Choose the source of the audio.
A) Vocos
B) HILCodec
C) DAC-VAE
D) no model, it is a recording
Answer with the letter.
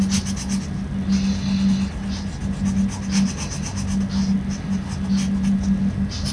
D